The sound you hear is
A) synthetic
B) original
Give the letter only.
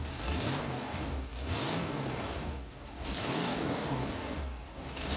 A